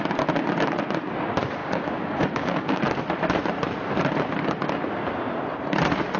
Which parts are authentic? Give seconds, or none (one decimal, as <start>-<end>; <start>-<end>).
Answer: 0.0-1.6; 2.8-6.2